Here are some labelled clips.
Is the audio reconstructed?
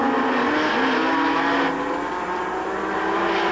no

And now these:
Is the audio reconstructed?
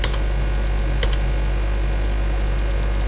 no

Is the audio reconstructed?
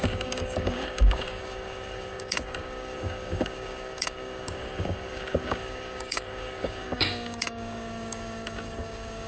yes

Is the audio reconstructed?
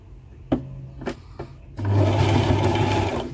no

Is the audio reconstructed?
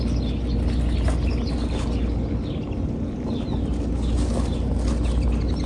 no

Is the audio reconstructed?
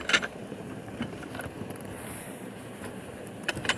yes